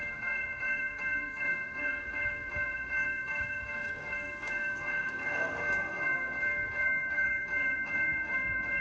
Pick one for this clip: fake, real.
fake